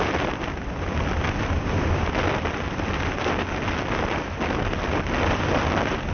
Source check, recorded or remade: recorded